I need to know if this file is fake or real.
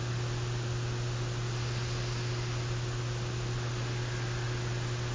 real